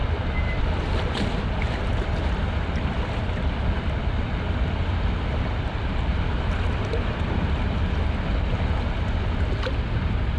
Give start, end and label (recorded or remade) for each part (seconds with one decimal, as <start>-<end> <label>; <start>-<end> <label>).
0.0-10.4 recorded